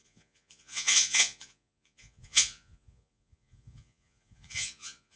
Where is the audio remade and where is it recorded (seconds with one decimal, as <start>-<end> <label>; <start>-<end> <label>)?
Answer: 0.0-5.2 remade